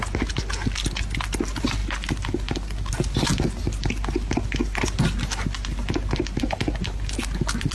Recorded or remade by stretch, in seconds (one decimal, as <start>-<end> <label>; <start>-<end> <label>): 0.0-7.7 recorded